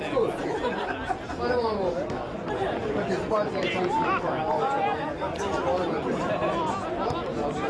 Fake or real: real